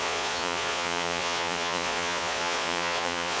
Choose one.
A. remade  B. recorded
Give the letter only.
A